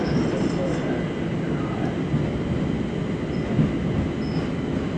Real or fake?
real